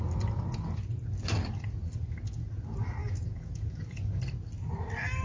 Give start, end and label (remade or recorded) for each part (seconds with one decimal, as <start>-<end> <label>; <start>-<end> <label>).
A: 0.0-3.0 recorded; 3.0-4.2 remade; 4.2-5.2 recorded